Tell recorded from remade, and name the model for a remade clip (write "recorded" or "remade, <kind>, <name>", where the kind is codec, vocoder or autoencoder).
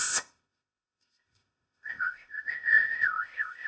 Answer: remade, codec, ZipCodec